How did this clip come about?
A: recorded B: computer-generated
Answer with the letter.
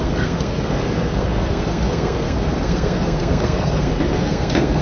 B